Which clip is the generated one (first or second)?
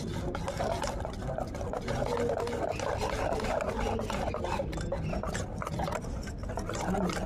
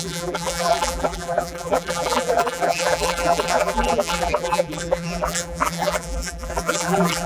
second